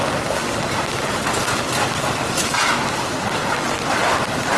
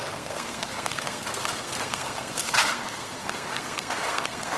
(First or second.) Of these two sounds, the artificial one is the second